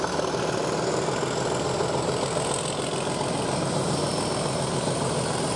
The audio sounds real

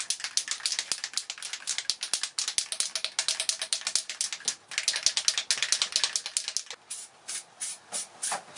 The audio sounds real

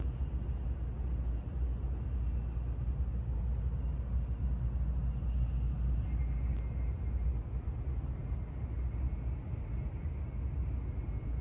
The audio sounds real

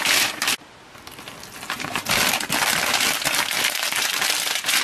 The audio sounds real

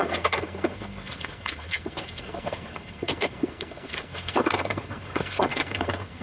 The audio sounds fake